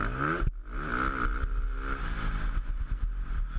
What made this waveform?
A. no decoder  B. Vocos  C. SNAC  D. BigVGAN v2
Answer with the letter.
A